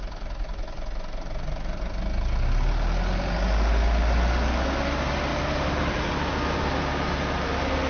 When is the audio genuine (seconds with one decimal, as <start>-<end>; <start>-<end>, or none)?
0.0-7.9